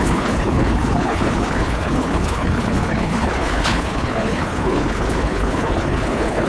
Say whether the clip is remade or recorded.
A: remade